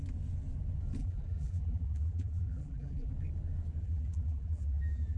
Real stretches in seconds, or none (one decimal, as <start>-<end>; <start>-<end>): 0.0-1.0; 3.1-3.8